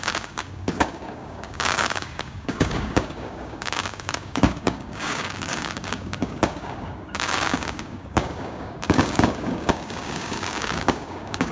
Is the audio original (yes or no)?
no